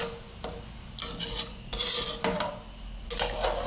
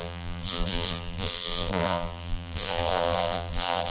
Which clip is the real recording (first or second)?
first